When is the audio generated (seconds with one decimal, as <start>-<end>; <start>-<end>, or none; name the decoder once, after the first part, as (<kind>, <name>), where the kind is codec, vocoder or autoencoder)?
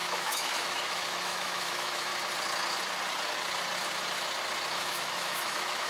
0.0-2.1 (autoencoder, DAC-VAE); 4.7-5.9